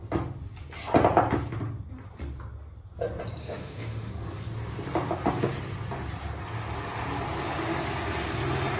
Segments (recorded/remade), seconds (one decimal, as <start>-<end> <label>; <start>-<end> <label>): 0.0-3.4 recorded; 3.4-4.1 remade; 4.1-8.8 recorded